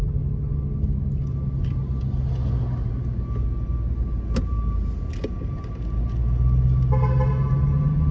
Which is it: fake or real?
real